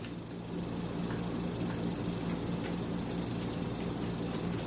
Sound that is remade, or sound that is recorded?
recorded